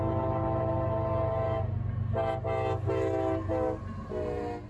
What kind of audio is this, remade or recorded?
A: recorded